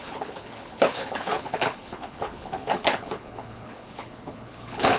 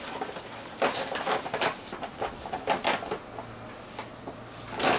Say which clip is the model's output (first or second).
first